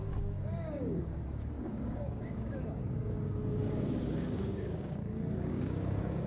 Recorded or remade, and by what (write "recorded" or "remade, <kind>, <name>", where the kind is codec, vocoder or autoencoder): remade, codec, DAC